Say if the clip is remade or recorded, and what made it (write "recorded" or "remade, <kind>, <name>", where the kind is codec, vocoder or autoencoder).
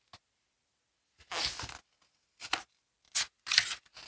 recorded